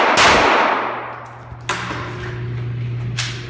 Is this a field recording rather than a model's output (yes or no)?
yes